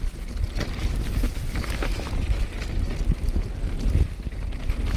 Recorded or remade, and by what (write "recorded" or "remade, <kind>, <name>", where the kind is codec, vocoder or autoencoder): recorded